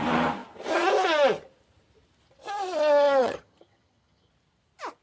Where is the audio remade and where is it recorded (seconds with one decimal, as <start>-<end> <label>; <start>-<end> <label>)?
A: 0.0-3.2 recorded; 3.2-4.3 remade; 4.3-5.0 recorded